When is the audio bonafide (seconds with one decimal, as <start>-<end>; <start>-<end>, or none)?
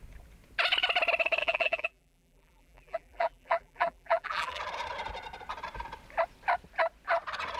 0.0-1.4; 4.6-7.6